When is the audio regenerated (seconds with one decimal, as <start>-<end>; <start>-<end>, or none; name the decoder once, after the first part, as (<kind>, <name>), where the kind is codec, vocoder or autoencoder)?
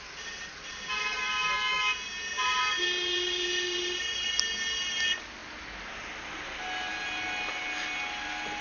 2.4-4.4 (vocoder, BigVGAN v2)